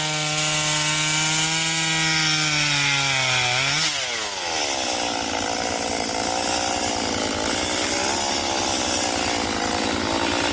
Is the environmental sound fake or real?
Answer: real